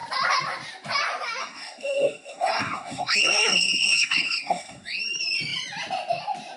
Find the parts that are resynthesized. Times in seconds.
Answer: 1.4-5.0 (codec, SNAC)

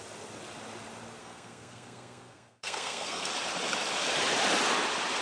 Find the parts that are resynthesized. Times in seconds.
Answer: 1.2-3.3 (codec, SNAC)

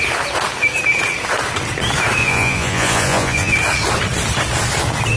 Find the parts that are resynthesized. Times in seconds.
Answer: 2.2-3.5 (vocoder, Vocos)

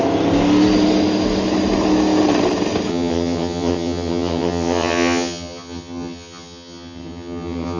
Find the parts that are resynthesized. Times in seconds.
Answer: 2.9-7.8 (vocoder, HiFi-GAN)

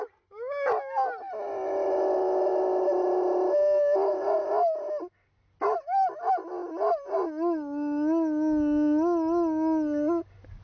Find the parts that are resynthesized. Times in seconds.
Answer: none

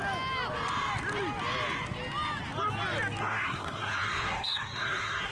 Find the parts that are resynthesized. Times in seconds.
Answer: 3.2-5.3 (codec, SNAC)

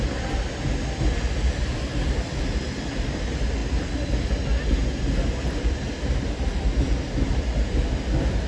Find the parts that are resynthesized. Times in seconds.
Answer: none